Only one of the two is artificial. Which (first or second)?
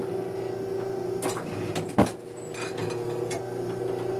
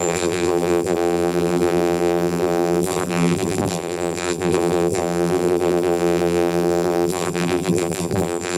second